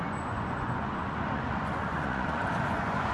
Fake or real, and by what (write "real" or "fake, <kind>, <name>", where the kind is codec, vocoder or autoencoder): fake, vocoder, Vocos